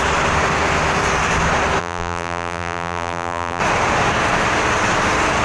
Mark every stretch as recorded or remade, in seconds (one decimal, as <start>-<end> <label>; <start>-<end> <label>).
0.0-1.8 recorded; 1.8-3.6 remade; 3.6-5.4 recorded